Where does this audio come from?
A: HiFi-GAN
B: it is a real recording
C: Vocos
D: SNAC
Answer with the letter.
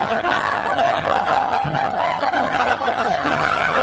A